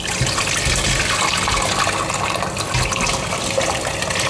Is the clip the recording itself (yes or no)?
yes